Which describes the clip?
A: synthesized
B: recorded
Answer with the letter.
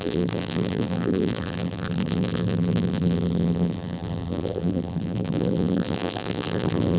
A